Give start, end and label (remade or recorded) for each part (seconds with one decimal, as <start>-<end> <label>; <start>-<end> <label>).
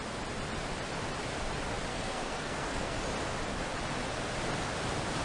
0.0-1.9 recorded; 1.9-3.0 remade; 3.0-5.2 recorded